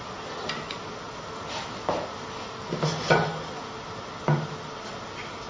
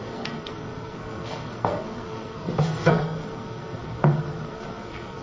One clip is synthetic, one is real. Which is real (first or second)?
first